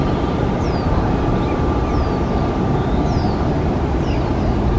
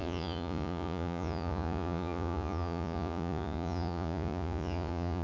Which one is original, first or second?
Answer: first